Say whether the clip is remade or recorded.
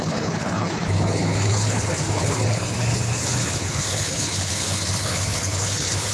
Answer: remade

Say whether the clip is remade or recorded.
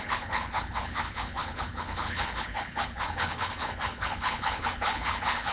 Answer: remade